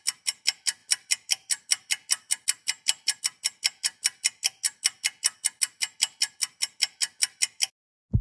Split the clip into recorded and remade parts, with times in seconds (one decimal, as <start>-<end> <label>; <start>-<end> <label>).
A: 0.0-8.2 recorded